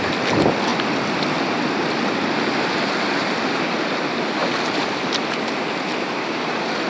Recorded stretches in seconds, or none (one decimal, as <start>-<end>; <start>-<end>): 0.0-0.7; 2.1-4.4; 6.5-6.9